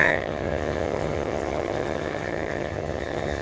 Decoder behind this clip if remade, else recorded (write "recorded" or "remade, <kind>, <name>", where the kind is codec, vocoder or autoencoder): remade, vocoder, HiFi-GAN